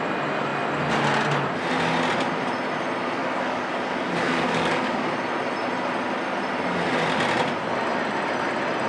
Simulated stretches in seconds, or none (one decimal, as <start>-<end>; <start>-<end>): 3.2-5.1